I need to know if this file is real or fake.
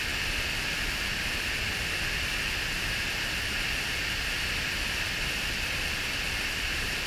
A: fake